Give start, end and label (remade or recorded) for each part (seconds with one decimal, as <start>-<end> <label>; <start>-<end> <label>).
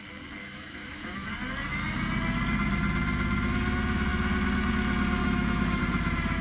0.0-0.4 recorded; 0.4-1.3 remade; 1.3-5.2 recorded; 5.2-5.8 remade; 5.8-6.4 recorded